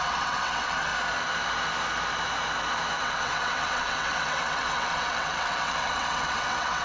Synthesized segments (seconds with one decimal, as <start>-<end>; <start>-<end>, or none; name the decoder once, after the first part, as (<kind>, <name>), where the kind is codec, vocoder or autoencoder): 0.0-0.9 (vocoder, WaveNeXt); 3.0-6.8